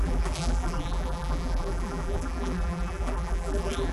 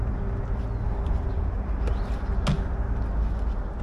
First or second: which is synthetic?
first